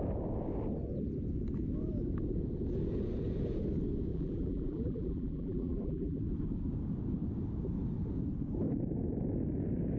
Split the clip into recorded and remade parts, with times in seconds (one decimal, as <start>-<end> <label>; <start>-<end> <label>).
0.0-4.1 recorded; 4.1-6.2 remade; 6.2-10.0 recorded